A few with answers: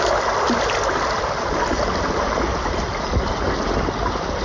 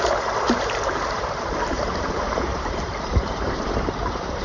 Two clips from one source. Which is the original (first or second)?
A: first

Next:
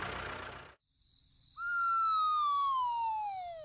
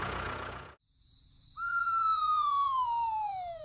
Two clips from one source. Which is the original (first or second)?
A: first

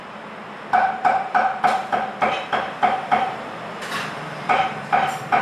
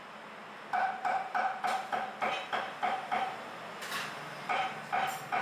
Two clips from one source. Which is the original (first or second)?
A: second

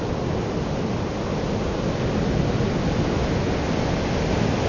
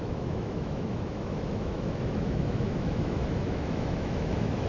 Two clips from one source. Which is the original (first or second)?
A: first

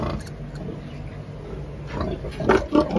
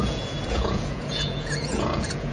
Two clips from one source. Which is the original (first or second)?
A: first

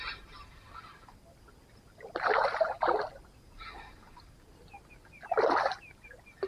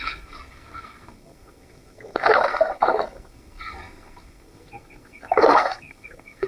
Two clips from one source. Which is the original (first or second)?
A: first